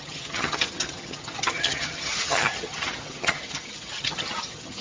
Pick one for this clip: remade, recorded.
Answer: remade